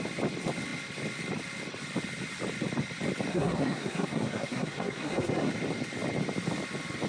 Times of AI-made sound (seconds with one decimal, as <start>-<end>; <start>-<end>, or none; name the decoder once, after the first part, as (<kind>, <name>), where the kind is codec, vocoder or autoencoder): 3.3-5.5 (codec, SNAC)